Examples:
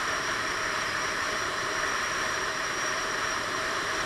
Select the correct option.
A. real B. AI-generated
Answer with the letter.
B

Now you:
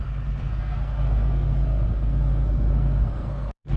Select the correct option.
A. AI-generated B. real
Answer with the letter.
A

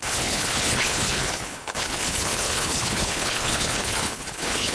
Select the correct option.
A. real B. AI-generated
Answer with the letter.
B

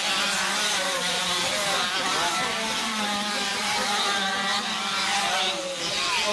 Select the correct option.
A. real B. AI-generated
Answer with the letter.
A